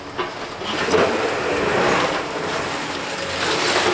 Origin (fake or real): real